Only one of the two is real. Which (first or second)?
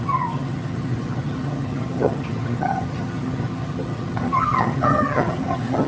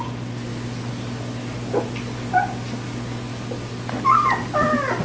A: second